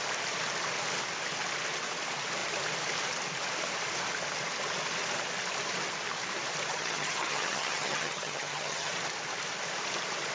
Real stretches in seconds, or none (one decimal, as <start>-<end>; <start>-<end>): 0.0-6.7; 8.9-10.3